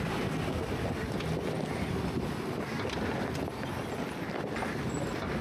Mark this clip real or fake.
real